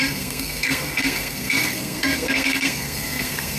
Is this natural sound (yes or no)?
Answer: no